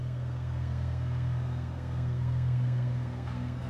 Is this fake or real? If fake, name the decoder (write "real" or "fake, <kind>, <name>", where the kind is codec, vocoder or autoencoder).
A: fake, codec, SNAC